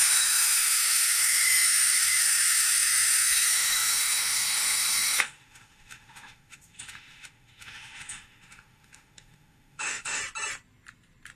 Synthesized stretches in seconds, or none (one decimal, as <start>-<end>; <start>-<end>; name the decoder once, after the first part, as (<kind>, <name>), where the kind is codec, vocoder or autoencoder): 0.0-10.2 (autoencoder, DAC-VAE)

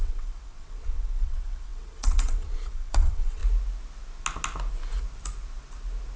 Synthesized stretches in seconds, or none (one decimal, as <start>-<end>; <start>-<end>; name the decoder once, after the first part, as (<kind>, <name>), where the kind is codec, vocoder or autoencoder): 0.0-3.4 (vocoder, WaveNeXt)

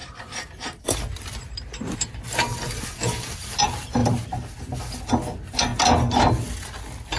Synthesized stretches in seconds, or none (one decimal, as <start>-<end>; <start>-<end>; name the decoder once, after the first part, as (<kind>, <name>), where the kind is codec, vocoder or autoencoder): 0.0-1.1 (vocoder, BigVGAN v2); 2.5-3.6; 4.0-5.0

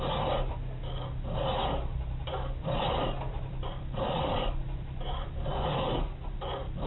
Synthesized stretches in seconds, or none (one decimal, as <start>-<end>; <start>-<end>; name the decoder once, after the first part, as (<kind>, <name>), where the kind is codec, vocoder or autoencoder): 1.9-6.0 (vocoder, BigVGAN v2)